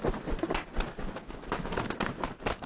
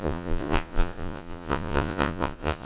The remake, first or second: second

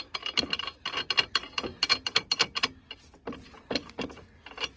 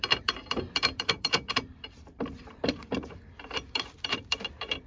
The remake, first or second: second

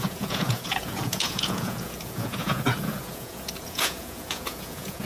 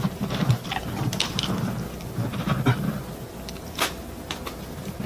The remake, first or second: first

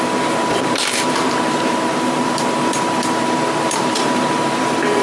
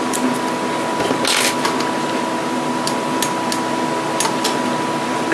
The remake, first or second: first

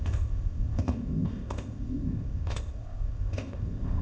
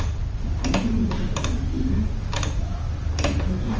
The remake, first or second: first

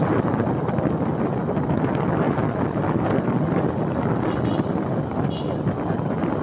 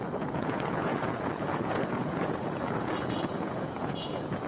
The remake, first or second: second